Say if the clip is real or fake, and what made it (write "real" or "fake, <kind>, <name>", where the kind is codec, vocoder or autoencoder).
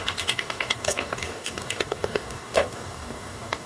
fake, codec, DAC